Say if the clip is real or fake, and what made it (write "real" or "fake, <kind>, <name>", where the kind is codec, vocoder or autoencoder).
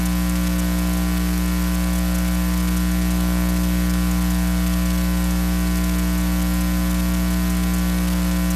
real